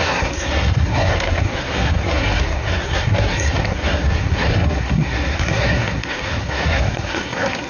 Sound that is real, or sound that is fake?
fake